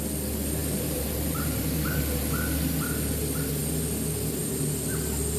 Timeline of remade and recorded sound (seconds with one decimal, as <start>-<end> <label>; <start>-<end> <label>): 0.0-0.6 recorded; 0.6-2.0 remade; 2.0-5.4 recorded